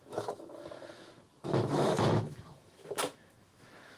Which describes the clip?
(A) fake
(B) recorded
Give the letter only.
A